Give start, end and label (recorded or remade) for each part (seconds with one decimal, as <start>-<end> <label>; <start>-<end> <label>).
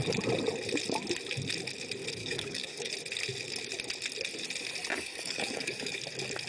0.0-2.2 recorded; 2.2-2.9 remade; 2.9-4.9 recorded; 4.9-6.0 remade; 6.0-6.5 recorded